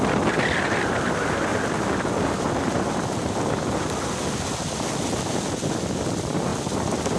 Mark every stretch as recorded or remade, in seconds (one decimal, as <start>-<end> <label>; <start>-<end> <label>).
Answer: 0.0-7.2 recorded

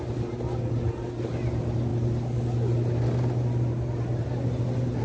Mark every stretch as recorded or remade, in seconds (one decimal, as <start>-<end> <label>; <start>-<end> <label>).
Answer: 0.0-5.0 recorded

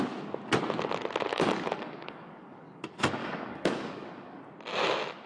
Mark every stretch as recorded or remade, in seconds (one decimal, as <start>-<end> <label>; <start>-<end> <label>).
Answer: 0.0-1.3 recorded; 1.3-2.8 remade; 2.8-3.2 recorded; 3.2-4.4 remade; 4.4-5.3 recorded

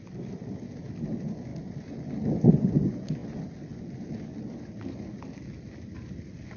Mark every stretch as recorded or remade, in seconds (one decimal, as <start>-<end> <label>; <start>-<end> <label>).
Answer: 0.0-6.6 recorded

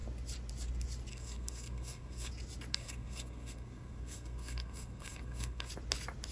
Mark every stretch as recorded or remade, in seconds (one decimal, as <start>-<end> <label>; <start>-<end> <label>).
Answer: 0.0-1.1 recorded; 1.1-2.3 remade; 2.3-2.7 recorded; 2.7-5.7 remade; 5.7-6.3 recorded

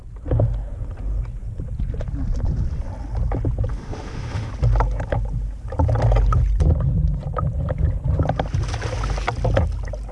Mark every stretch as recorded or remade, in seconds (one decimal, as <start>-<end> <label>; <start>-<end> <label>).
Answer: 0.0-3.7 recorded; 3.7-4.5 remade; 4.5-10.1 recorded

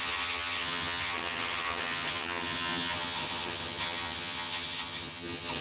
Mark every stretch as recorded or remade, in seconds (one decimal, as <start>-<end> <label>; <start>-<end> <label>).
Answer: 0.0-5.6 remade

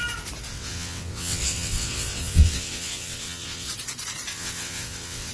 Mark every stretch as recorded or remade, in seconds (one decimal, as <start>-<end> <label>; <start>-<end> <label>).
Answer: 0.0-0.5 recorded; 0.5-3.7 remade; 3.7-4.3 recorded; 4.3-5.3 remade